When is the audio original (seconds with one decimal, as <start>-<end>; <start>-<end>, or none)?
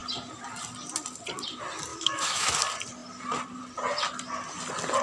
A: 0.0-1.9; 2.5-5.0